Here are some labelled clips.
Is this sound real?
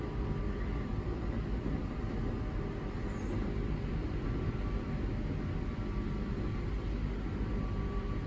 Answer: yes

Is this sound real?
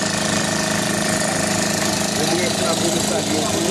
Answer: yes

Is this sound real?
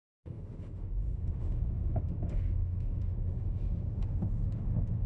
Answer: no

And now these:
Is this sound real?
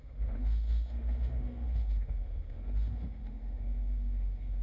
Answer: no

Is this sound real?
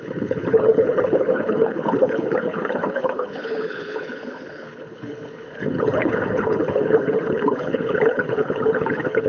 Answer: no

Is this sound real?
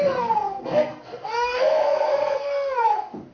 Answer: no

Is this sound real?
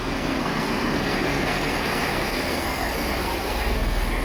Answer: no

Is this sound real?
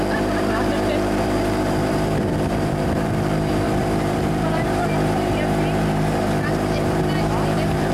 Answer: no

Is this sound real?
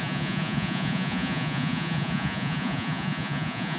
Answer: no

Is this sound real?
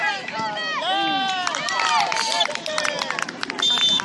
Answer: yes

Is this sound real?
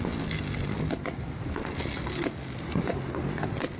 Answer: yes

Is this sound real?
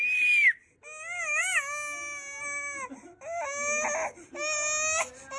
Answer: yes